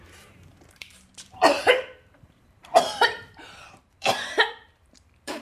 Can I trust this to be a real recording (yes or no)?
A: no